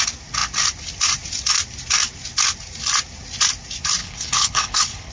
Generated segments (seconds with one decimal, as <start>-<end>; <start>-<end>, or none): 4.0-5.1